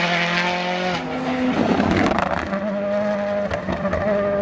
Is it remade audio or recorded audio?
recorded